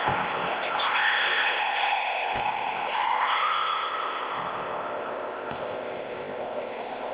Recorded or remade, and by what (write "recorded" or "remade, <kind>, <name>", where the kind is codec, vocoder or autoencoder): remade, codec, ZipCodec